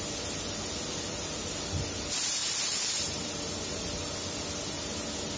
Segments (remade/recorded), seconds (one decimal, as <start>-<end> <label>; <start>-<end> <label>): 0.0-2.4 recorded; 2.4-3.3 remade; 3.3-5.4 recorded